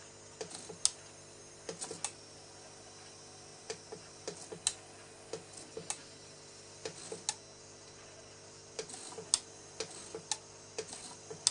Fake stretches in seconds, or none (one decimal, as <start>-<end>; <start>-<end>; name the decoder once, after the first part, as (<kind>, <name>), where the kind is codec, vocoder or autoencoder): 3.5-4.1 (vocoder, BigVGAN v2)